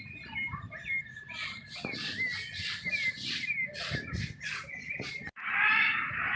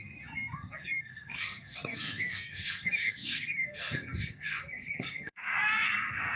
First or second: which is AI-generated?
second